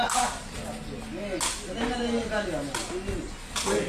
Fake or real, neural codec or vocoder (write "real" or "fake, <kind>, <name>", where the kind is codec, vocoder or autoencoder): real